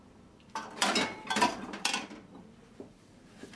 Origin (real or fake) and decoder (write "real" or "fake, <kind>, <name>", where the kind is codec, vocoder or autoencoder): fake, vocoder, BigVGAN v2